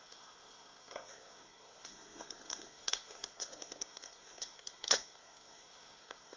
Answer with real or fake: fake